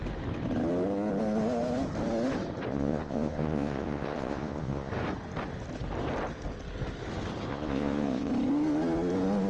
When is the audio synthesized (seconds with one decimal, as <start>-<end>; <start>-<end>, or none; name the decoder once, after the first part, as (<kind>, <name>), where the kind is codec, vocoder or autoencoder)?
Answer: 2.7-4.9 (vocoder, Vocos); 7.5-8.3